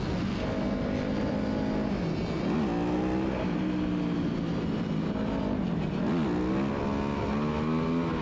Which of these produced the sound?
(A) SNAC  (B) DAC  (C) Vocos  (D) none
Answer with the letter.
D